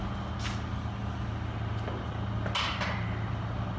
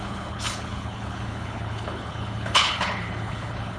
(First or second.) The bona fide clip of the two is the first